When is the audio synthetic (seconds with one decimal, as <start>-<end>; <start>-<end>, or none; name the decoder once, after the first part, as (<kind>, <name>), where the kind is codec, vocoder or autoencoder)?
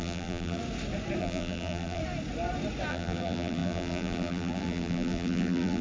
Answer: 0.0-0.6 (vocoder, BigVGAN v2); 1.2-2.0; 2.9-5.8